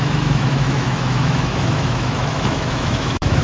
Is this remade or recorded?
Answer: remade